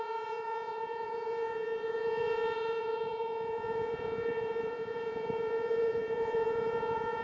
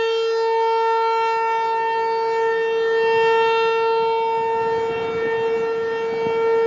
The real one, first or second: second